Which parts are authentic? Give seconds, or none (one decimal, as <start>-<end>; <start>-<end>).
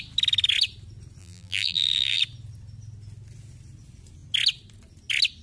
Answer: 0.0-1.2; 2.2-5.4